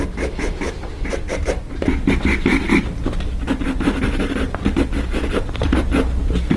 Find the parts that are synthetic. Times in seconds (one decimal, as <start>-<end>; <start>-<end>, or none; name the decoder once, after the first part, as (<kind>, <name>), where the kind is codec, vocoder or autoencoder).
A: 0.0-6.6 (vocoder, BigVGAN v2)